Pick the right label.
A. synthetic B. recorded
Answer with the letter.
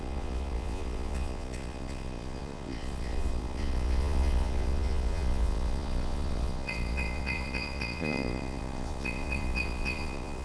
A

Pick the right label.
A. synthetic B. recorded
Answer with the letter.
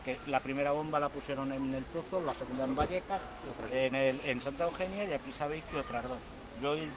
A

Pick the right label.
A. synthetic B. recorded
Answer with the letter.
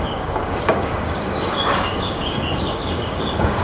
A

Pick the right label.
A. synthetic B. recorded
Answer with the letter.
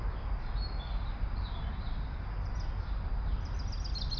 B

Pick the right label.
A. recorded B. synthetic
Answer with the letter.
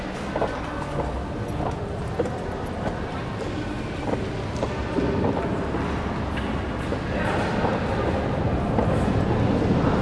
A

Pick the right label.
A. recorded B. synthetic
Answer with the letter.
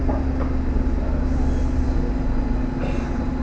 A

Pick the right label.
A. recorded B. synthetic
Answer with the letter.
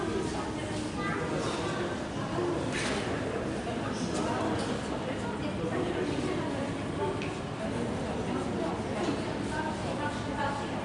A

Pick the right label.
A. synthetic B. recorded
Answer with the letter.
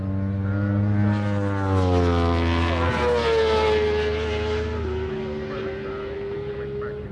B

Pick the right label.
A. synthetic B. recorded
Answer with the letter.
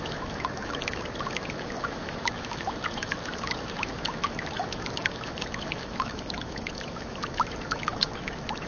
A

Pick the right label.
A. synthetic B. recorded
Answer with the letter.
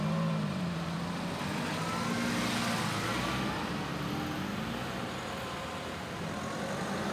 B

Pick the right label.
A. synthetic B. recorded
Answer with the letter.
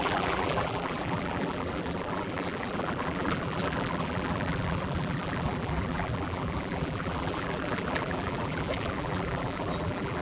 A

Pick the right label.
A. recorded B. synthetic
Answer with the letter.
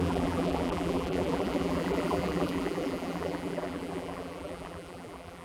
B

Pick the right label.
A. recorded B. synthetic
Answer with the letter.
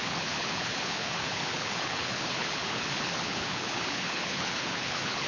B